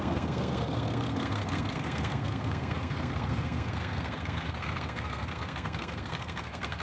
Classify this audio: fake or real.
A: fake